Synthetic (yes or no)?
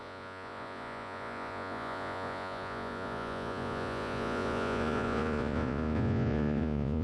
yes